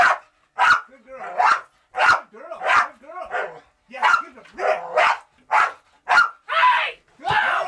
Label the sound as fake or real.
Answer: real